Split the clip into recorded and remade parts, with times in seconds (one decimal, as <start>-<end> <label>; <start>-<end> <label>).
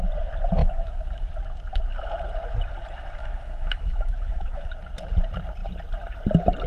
0.0-0.6 recorded; 0.6-1.3 remade; 1.3-3.2 recorded; 3.2-4.7 remade; 4.7-6.7 recorded